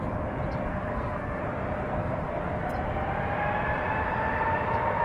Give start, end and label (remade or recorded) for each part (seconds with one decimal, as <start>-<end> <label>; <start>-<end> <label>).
0.0-0.7 recorded; 0.7-1.4 remade; 1.4-1.9 recorded; 1.9-2.4 remade; 2.4-5.0 recorded